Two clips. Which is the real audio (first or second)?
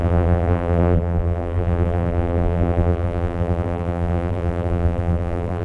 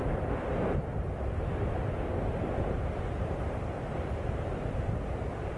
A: second